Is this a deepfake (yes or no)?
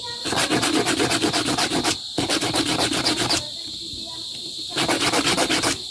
no